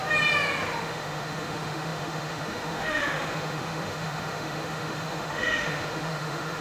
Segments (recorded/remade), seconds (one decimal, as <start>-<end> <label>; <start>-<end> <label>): 0.0-0.8 recorded; 0.8-6.6 remade